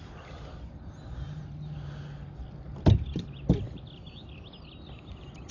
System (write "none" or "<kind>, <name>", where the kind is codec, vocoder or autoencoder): none